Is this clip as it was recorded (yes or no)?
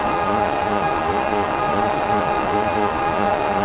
no